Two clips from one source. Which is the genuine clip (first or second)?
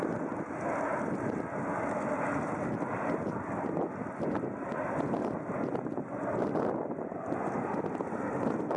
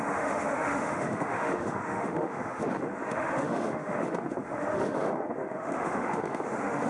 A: first